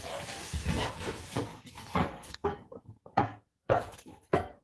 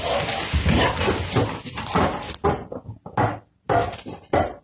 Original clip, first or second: second